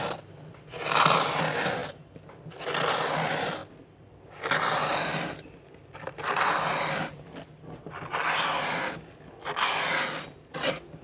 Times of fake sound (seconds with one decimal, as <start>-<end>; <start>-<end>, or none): 3.6-7.6